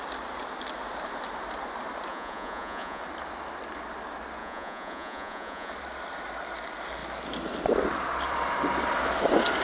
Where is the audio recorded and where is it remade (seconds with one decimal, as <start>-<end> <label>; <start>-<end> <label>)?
0.0-2.1 recorded; 2.1-3.0 remade; 3.0-4.4 recorded; 4.4-5.7 remade; 5.7-9.6 recorded